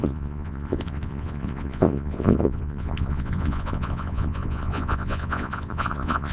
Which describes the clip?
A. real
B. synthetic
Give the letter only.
B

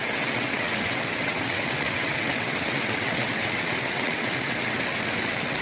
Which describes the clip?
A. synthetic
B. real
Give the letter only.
A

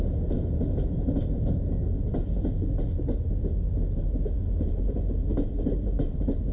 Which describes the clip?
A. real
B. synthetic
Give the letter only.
A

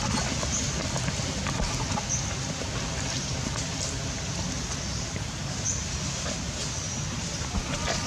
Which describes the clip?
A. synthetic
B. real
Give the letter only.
B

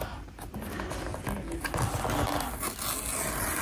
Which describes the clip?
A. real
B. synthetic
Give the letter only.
A